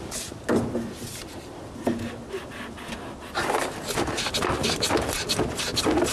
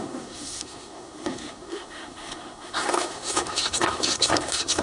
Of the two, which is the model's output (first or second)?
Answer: second